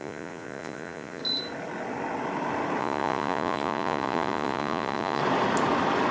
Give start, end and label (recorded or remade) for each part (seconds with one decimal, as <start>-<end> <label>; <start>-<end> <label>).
0.0-1.2 remade; 1.2-2.8 recorded; 2.8-5.2 remade; 5.2-6.1 recorded